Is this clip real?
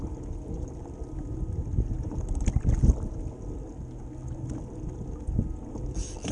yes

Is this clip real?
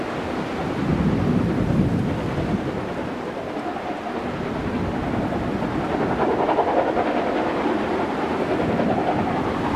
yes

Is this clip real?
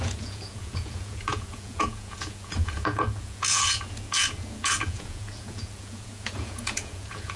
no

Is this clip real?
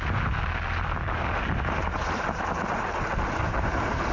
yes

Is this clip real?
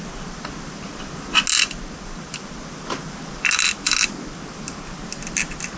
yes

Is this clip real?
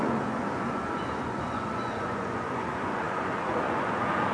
no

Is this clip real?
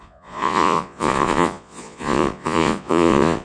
no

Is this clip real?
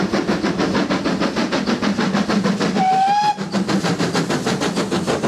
yes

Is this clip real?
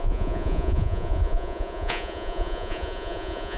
no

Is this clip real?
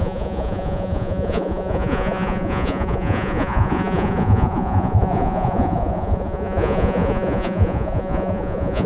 no